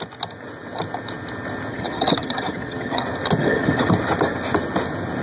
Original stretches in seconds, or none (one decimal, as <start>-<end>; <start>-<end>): 0.0-1.7; 3.0-3.4; 3.9-5.2